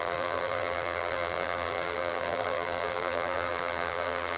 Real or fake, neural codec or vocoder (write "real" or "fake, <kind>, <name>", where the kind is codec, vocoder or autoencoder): fake, vocoder, BigVGAN v2